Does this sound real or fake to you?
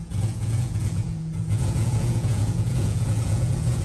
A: fake